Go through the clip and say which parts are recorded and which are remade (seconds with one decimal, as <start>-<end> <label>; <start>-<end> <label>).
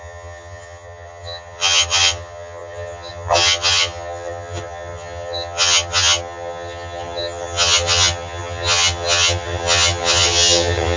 0.0-11.0 remade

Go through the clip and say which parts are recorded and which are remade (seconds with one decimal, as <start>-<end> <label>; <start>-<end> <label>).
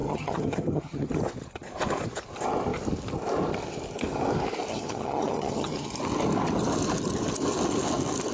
0.0-1.2 remade; 1.2-4.7 recorded; 4.7-5.9 remade; 5.9-8.3 recorded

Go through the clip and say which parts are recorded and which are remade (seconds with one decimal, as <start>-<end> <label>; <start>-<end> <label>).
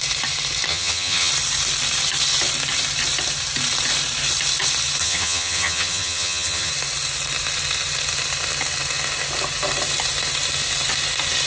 0.0-0.7 recorded; 0.7-1.3 remade; 1.3-5.0 recorded; 5.0-6.7 remade; 6.7-11.5 recorded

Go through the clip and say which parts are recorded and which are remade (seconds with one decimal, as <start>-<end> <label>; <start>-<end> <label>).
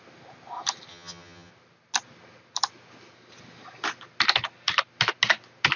0.0-0.9 recorded; 0.9-1.5 remade; 1.5-5.8 recorded